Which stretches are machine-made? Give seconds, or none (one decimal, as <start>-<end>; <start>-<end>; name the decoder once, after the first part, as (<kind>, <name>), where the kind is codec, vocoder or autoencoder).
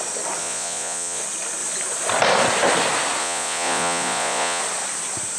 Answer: 0.4-1.2 (vocoder, Vocos); 3.2-4.6